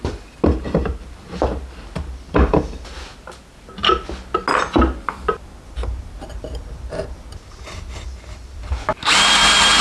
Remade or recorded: recorded